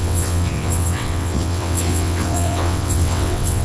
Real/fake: fake